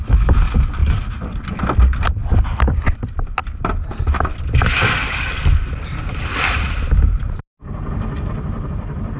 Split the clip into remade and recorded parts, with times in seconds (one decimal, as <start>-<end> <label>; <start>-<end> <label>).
0.0-9.2 recorded